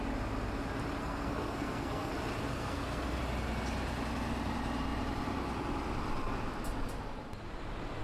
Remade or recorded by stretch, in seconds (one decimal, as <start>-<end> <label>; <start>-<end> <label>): 0.0-1.0 recorded; 1.0-2.1 remade; 2.1-2.5 recorded; 2.5-3.2 remade; 3.2-8.0 recorded